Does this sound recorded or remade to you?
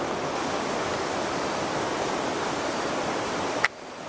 recorded